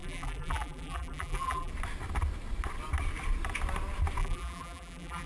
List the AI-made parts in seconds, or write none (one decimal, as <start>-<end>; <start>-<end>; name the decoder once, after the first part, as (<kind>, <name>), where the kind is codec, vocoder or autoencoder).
0.0-1.7 (vocoder, BigVGAN v2); 4.2-5.3